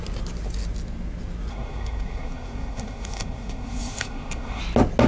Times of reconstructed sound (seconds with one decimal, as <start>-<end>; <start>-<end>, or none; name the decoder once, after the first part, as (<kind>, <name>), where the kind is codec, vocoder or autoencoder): 1.5-4.6 (codec, SNAC)